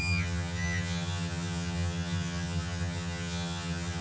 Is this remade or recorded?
remade